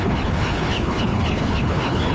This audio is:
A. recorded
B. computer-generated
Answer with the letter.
B